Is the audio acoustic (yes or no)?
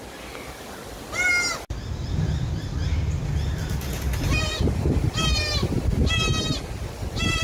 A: yes